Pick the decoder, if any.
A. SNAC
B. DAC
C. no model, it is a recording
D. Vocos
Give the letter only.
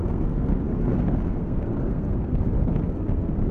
A